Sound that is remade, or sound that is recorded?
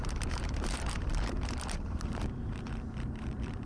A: remade